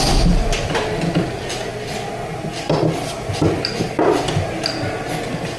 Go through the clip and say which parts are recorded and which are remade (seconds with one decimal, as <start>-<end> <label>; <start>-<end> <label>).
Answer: 0.0-5.6 recorded